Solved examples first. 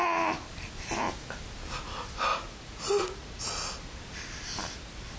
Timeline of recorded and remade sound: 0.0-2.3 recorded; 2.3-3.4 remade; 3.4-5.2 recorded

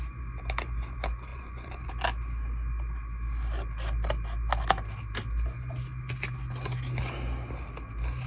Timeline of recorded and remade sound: 0.0-1.3 recorded; 1.3-1.9 remade; 1.9-8.3 recorded

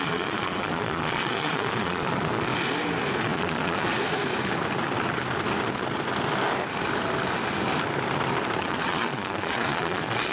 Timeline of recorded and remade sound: 0.0-2.5 remade; 2.5-3.2 recorded; 3.2-3.9 remade; 3.9-8.6 recorded; 8.6-10.3 remade

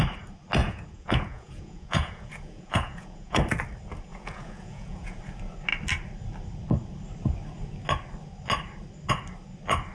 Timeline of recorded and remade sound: 0.0-0.6 recorded; 0.6-3.4 remade; 3.4-4.1 recorded; 4.1-5.2 remade; 5.2-9.9 recorded

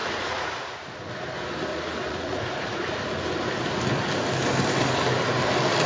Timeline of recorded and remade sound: 0.0-1.2 remade; 1.2-1.7 recorded; 1.7-3.0 remade; 3.0-5.9 recorded